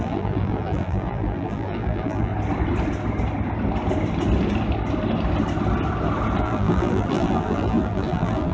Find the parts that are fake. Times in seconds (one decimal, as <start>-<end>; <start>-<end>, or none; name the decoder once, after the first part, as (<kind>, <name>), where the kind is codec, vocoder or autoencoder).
0.0-2.3 (vocoder, BigVGAN v2); 6.4-8.5